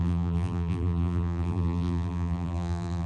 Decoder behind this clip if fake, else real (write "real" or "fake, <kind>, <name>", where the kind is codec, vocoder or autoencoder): fake, vocoder, BigVGAN v2